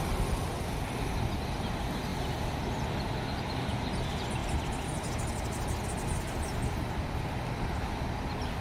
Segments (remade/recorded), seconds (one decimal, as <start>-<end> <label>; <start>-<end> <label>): 0.0-8.6 recorded